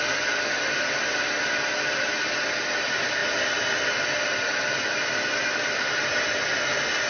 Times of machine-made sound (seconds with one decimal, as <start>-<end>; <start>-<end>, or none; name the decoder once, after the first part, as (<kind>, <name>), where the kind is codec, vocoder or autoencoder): none